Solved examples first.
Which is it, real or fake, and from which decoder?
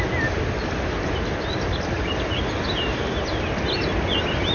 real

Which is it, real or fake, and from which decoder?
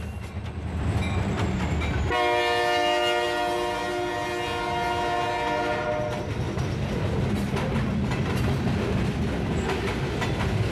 real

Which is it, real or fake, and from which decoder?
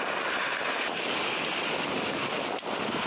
real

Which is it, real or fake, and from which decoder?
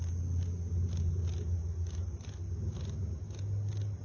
real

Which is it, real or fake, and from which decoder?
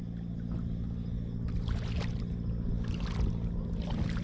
real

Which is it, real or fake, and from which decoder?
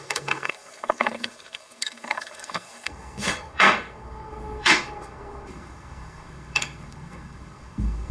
fake, codec, SNAC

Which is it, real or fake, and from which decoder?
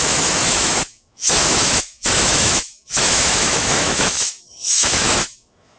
fake, autoencoder, DAC-VAE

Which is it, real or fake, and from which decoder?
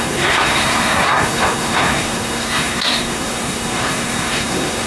fake, codec, SNAC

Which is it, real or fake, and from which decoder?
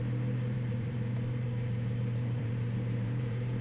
fake, vocoder, BigVGAN v2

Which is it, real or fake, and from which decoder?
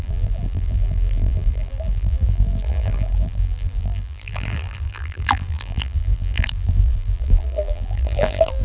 fake, vocoder, BigVGAN v2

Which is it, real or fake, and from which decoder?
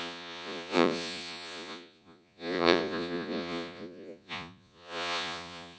fake, vocoder, Vocos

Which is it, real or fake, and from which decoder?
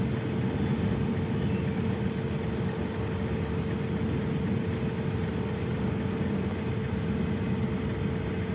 real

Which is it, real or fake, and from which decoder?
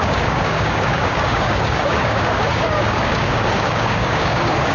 fake, codec, DAC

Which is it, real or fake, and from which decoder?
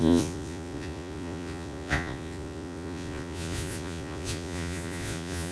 fake, vocoder, Vocos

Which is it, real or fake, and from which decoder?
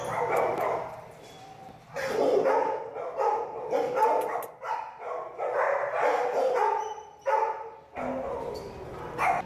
real